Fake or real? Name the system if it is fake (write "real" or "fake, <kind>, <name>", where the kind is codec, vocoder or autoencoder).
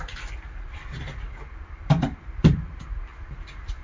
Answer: fake, vocoder, BigVGAN v2